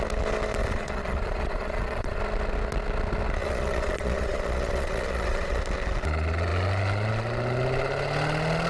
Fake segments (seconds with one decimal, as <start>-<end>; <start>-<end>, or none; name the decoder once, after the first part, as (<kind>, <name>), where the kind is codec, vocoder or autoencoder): 0.6-2.2 (vocoder, Vocos); 3.4-5.6